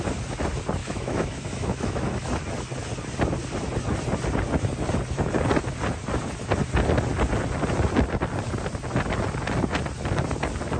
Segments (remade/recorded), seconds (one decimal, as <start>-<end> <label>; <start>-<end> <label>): 0.0-0.8 recorded; 0.8-2.3 remade; 2.3-10.8 recorded

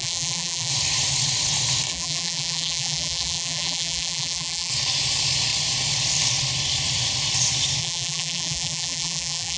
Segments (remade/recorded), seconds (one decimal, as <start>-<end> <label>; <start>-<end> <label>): 0.0-0.7 remade; 0.7-1.9 recorded; 1.9-4.7 remade; 4.7-7.8 recorded; 7.8-9.6 remade